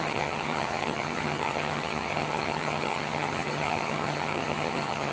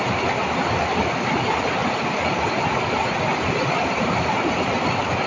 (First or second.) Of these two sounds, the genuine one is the second